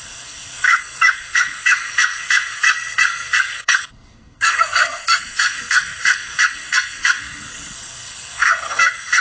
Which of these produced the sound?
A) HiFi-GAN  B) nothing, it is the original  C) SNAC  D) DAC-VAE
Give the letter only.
C